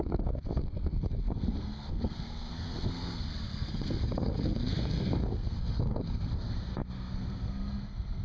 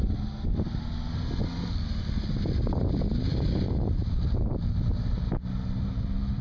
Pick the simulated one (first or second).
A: first